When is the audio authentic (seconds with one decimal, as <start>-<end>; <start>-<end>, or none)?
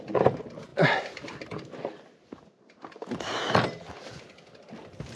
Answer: 0.0-5.2